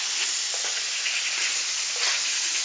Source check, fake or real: real